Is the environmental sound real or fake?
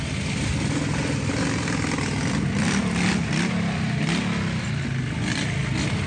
real